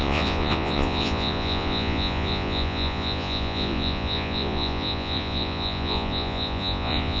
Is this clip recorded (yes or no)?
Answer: no